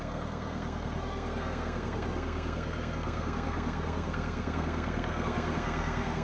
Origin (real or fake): fake